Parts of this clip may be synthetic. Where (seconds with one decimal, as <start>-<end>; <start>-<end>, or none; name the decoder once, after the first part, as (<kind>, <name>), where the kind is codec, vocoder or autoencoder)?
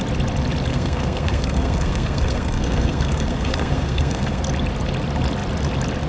0.7-4.4 (codec, SNAC)